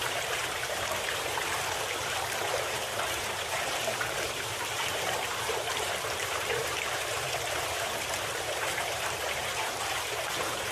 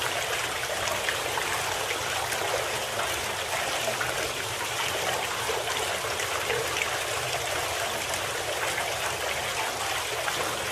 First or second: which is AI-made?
first